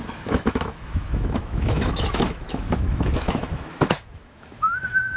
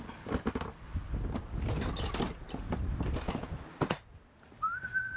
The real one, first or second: second